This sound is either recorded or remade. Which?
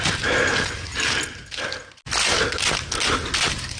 recorded